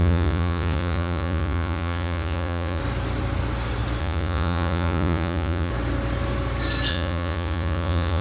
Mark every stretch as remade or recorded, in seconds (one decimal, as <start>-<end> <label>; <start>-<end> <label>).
0.0-2.8 remade; 2.8-4.0 recorded; 4.0-5.7 remade; 5.7-6.9 recorded; 6.9-8.2 remade